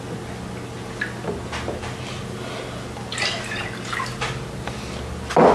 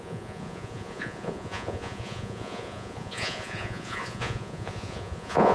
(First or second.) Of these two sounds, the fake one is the second